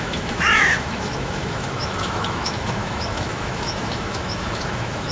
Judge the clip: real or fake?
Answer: fake